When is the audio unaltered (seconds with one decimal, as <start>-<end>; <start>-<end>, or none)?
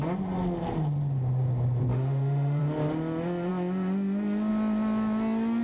0.0-1.9; 2.6-5.6